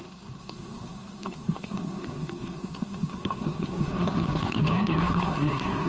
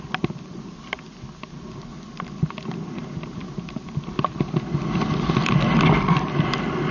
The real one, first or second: second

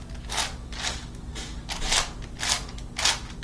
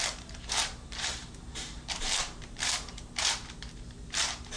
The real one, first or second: first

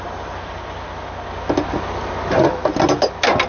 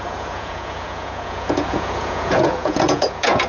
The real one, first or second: first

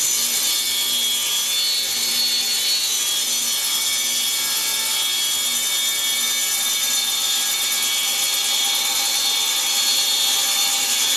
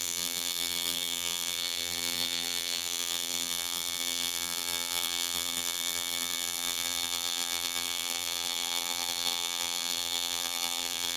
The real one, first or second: first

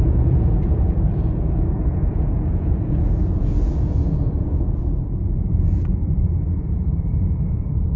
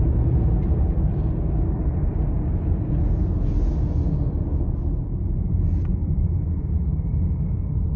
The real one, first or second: second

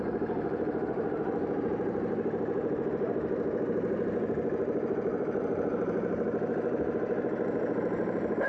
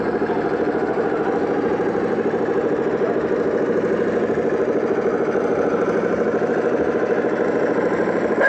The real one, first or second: second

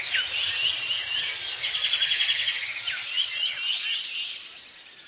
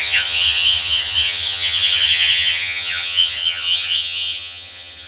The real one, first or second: first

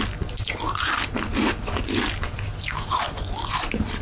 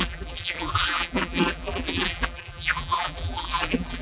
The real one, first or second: first